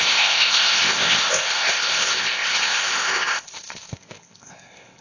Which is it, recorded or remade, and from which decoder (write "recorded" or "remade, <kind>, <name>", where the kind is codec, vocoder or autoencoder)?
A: remade, codec, ZipCodec